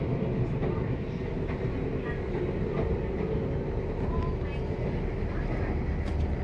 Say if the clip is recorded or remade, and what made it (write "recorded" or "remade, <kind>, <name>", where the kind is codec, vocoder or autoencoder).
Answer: recorded